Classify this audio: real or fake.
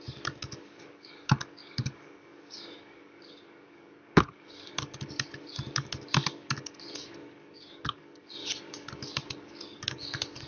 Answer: fake